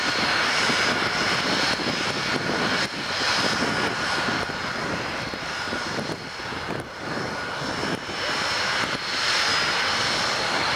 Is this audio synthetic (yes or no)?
no